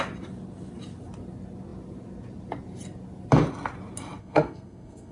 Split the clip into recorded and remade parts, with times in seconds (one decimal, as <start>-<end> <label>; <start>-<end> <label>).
0.0-4.2 recorded; 4.2-5.1 remade